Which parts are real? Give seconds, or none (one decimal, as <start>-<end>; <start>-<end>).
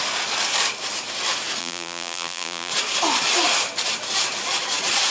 0.0-1.6; 2.7-5.1